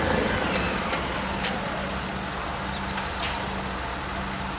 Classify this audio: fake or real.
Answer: real